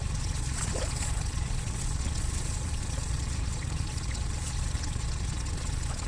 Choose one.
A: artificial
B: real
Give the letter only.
A